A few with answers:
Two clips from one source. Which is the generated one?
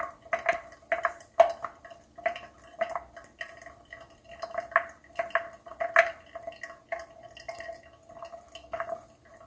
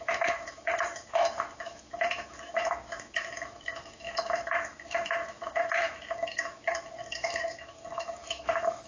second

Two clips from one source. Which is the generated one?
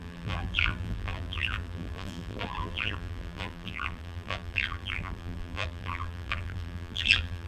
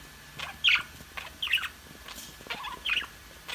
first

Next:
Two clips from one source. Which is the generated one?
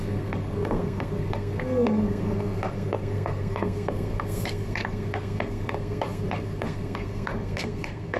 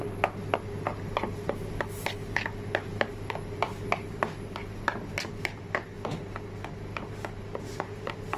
first